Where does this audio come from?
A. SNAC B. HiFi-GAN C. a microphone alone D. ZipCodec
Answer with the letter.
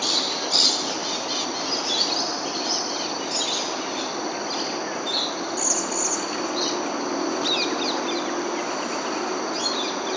C